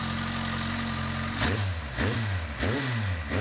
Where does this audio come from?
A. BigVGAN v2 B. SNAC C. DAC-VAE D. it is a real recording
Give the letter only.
D